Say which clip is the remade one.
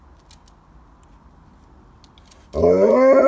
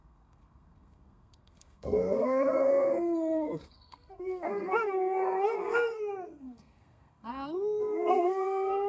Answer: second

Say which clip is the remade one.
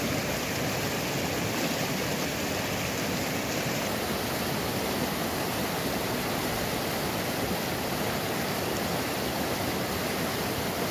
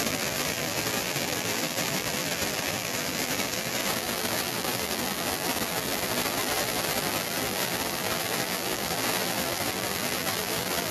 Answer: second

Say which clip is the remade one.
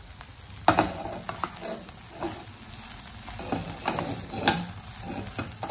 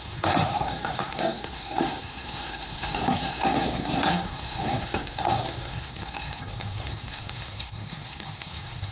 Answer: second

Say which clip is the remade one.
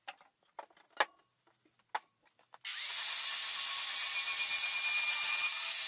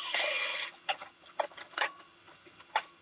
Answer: second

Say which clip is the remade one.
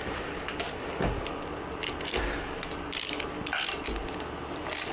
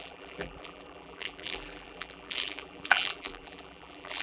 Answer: second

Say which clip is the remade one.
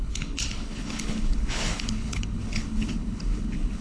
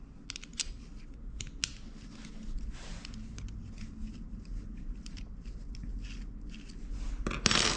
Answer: first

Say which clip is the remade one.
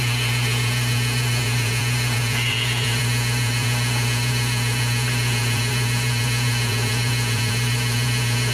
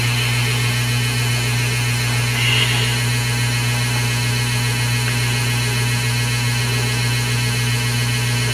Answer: first